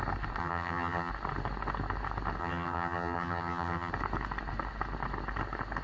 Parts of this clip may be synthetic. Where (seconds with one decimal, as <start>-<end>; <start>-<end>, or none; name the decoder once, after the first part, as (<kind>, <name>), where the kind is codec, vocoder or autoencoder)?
0.4-1.1 (vocoder, HiFi-GAN); 2.4-3.9